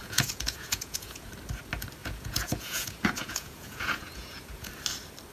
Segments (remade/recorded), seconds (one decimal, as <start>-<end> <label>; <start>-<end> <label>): 0.0-1.3 remade; 1.3-2.0 recorded; 2.0-4.7 remade; 4.7-5.3 recorded

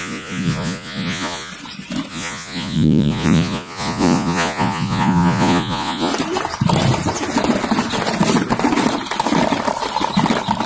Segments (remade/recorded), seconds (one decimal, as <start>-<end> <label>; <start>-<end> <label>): 0.0-1.5 remade; 1.5-2.1 recorded; 2.1-6.1 remade; 6.1-10.7 recorded